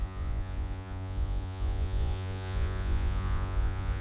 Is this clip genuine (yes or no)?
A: no